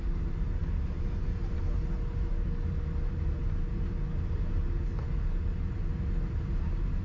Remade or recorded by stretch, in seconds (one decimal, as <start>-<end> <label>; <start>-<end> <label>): 0.0-7.0 recorded